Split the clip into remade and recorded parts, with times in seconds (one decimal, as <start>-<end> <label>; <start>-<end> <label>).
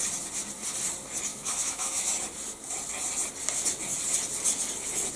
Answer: 0.0-1.3 recorded; 1.3-2.1 remade; 2.1-5.2 recorded